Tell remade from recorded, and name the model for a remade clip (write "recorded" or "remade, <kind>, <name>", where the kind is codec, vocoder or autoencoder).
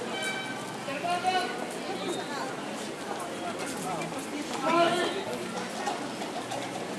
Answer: recorded